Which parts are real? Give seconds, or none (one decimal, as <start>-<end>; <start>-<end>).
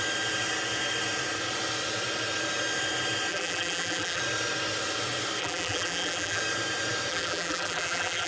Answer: 0.0-3.3; 4.2-5.4; 6.4-7.1